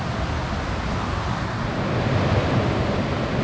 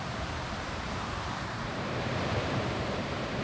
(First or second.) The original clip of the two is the first